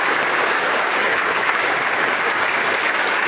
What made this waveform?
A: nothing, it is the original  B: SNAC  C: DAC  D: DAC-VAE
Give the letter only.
C